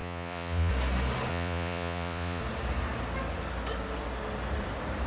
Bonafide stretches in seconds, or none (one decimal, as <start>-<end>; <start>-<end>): 0.7-1.3; 2.4-5.1